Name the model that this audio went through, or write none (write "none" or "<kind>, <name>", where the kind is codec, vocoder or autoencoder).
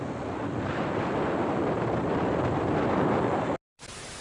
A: none